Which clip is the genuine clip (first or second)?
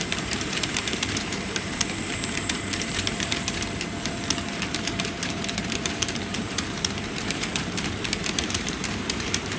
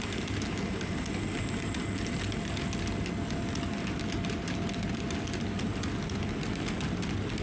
second